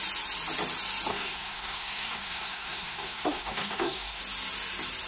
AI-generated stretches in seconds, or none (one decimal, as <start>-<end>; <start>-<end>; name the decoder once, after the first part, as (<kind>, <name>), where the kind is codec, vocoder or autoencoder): 1.1-4.2 (codec, SNAC)